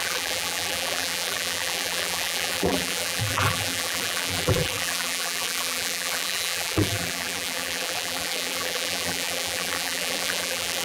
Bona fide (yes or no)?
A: no